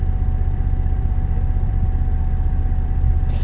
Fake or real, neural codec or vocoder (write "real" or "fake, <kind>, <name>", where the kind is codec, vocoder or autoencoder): fake, vocoder, BigVGAN v2